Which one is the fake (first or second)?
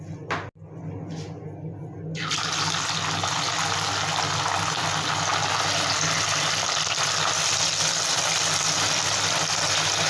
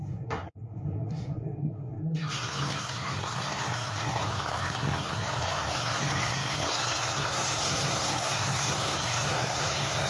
second